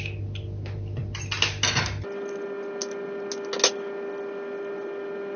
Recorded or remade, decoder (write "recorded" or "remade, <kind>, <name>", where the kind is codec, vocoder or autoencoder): recorded